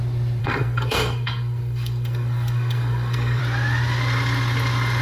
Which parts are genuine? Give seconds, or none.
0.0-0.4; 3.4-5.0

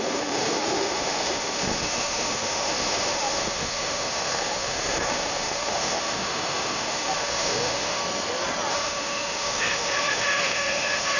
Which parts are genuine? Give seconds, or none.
8.0-8.7

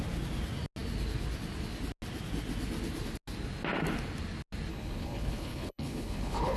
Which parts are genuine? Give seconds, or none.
0.0-4.7

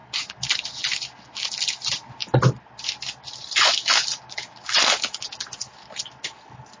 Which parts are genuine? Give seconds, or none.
0.0-2.2; 3.7-5.3; 6.0-6.8

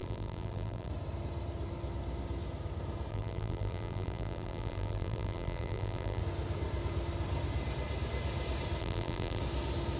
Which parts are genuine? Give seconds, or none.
0.9-3.1; 6.2-8.8; 9.4-10.0

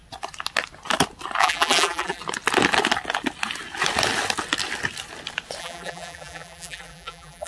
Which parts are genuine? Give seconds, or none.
0.0-1.4; 2.2-5.6

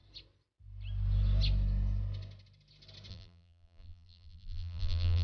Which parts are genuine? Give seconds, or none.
0.0-3.1

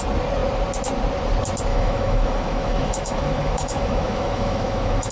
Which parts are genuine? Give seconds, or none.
0.0-1.7